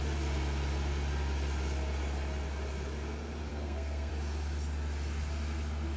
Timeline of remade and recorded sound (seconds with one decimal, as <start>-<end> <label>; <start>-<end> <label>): 0.0-3.5 recorded; 3.5-4.1 remade; 4.1-6.0 recorded